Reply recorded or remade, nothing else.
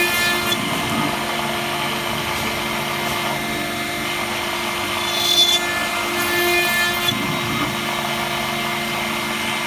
recorded